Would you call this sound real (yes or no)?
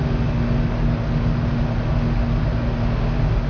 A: yes